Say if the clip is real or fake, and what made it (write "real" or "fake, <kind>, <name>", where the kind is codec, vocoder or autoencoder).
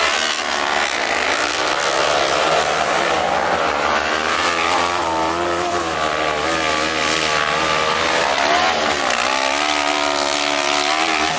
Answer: real